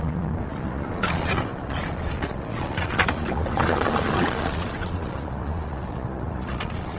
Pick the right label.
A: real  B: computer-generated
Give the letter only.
B